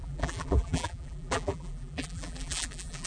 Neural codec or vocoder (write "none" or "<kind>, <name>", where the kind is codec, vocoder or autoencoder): vocoder, BigVGAN v2